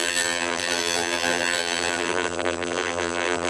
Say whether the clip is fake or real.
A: fake